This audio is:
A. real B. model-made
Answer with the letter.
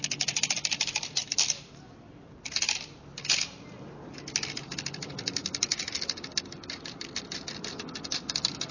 A